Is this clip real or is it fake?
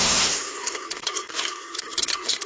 fake